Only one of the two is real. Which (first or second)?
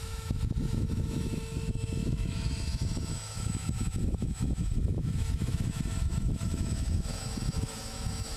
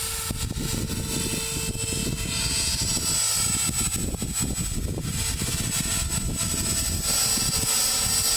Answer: second